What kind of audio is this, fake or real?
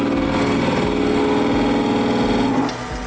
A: real